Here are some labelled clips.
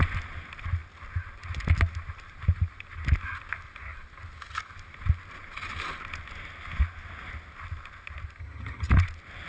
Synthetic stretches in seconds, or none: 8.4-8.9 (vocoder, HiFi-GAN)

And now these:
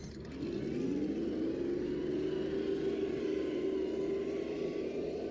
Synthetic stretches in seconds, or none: none

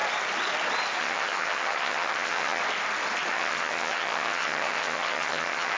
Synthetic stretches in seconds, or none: 1.0-2.6 (vocoder, HiFi-GAN); 3.3-5.8

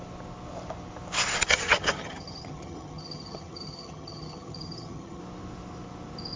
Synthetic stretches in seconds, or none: 1.4-5.2 (vocoder, HiFi-GAN)

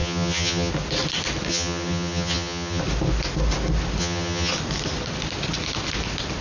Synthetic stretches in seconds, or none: 0.0-0.7 (vocoder, HiFi-GAN); 1.5-2.8; 4.0-4.5